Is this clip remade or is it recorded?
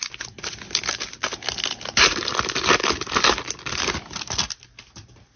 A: recorded